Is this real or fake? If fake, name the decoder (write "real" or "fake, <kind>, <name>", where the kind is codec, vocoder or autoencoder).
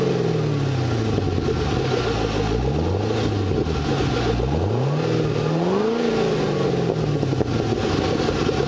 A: real